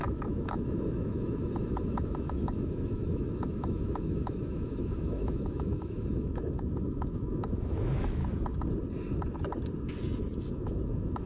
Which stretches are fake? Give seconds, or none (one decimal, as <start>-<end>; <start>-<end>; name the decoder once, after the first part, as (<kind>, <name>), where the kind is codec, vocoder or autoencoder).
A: 0.0-8.2 (autoencoder, DAC-VAE); 10.5-11.3